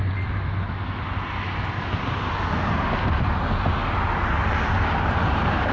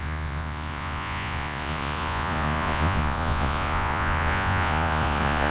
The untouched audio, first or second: first